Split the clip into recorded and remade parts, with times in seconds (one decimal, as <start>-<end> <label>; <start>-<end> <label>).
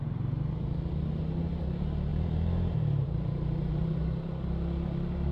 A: 0.0-2.1 recorded; 2.1-4.0 remade; 4.0-5.3 recorded